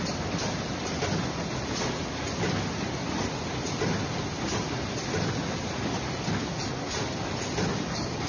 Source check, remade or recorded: recorded